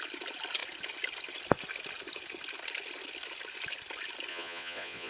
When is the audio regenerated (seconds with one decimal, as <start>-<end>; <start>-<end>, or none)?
4.3-5.1